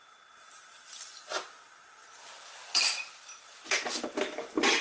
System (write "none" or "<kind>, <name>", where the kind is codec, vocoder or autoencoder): none